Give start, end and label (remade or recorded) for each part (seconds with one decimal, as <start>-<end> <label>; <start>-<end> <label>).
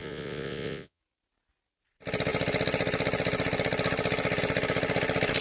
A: 0.0-1.0 remade; 1.0-5.4 recorded